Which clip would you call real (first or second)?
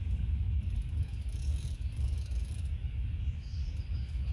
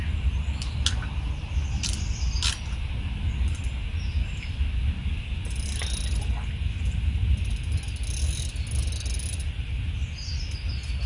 second